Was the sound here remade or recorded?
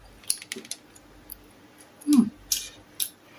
recorded